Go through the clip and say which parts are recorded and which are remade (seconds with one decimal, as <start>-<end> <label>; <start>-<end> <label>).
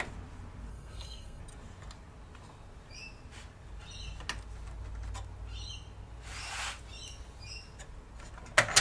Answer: 0.0-0.7 recorded; 0.7-1.4 remade; 1.4-8.8 recorded